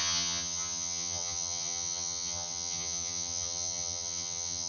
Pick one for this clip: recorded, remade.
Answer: remade